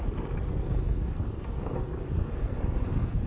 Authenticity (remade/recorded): remade